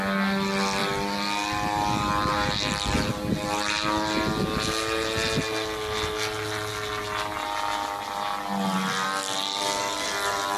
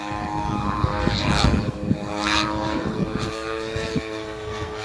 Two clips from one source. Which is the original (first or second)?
first